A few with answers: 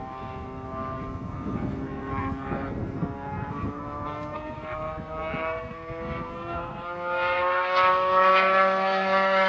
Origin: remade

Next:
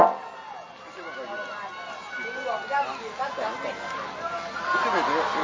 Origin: recorded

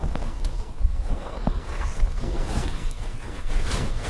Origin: remade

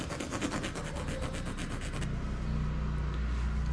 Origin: recorded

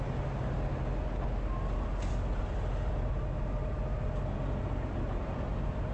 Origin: recorded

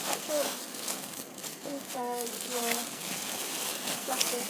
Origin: remade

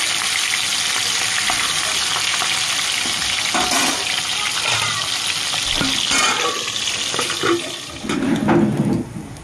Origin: recorded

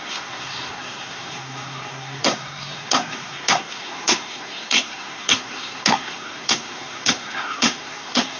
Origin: remade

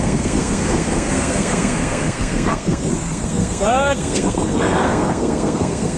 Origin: remade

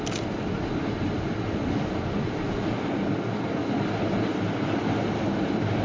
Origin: recorded